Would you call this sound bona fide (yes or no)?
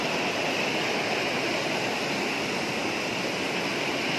yes